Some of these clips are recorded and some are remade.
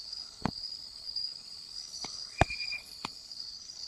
remade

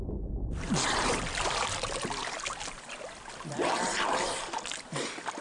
recorded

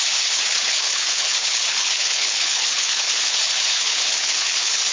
remade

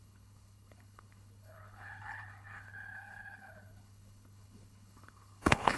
remade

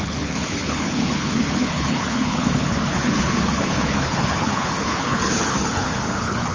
remade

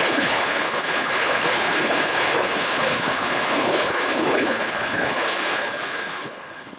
remade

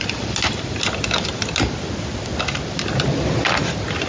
recorded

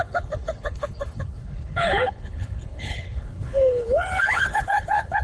remade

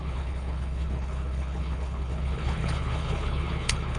remade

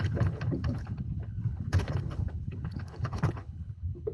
remade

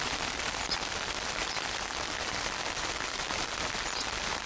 recorded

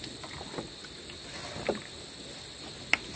recorded